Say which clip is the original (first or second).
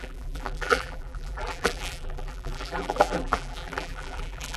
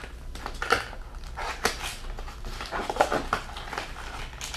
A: second